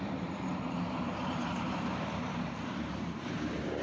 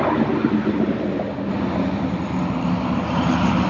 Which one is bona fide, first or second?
second